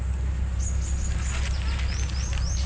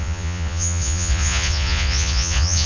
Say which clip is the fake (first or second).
second